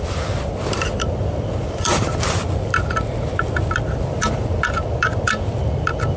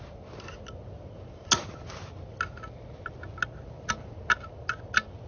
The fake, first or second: first